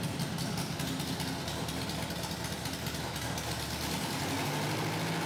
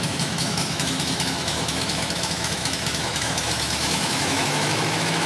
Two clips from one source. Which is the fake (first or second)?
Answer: second